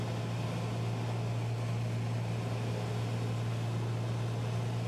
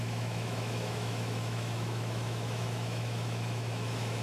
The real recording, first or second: first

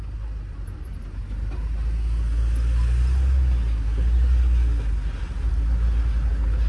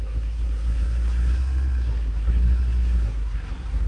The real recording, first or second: first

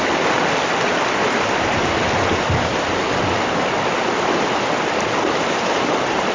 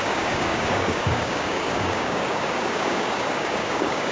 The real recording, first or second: first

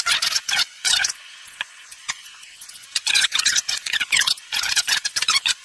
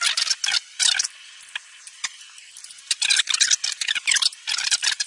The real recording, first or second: second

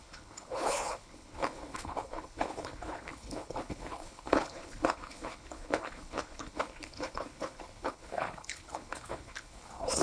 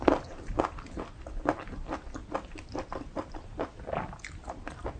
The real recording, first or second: second